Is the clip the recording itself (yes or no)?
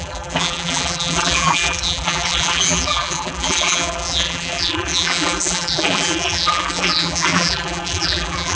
no